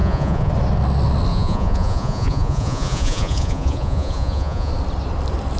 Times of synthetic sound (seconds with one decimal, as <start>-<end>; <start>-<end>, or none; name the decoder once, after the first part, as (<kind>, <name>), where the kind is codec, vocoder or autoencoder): 0.0-0.5 (vocoder, Vocos); 1.3-4.7